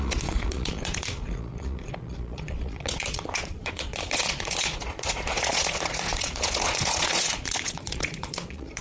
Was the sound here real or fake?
fake